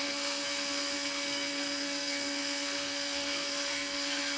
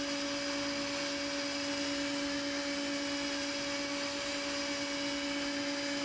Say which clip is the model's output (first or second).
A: first